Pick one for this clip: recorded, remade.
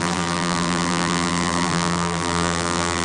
remade